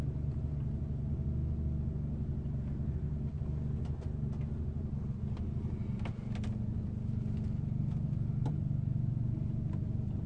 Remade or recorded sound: recorded